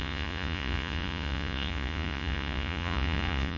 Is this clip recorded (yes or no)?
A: no